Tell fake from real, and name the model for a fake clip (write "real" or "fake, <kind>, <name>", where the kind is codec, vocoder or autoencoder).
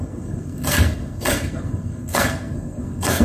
fake, codec, SNAC